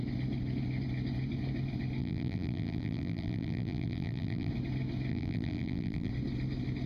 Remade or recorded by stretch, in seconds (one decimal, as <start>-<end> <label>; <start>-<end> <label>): 0.0-2.0 recorded; 2.0-4.5 remade; 4.5-5.1 recorded; 5.1-6.1 remade; 6.1-6.9 recorded

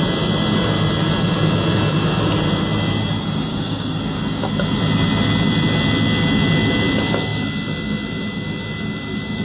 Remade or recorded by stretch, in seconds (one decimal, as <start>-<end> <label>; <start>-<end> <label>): 0.0-3.5 recorded; 3.5-4.0 remade; 4.0-9.4 recorded